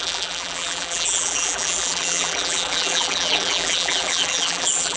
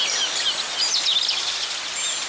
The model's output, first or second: first